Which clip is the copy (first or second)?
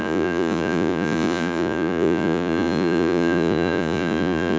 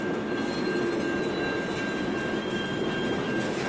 first